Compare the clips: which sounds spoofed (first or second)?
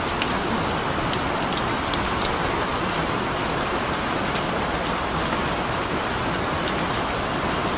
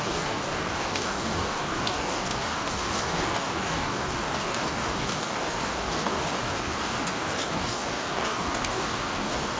second